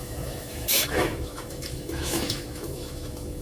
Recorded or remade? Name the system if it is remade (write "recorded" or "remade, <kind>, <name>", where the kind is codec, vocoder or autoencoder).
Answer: remade, autoencoder, DAC-VAE